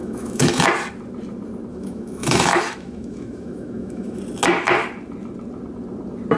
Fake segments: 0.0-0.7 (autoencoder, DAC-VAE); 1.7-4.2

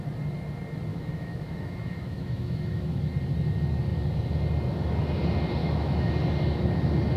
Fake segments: 0.9-3.0 (autoencoder, DAC-VAE); 5.6-6.1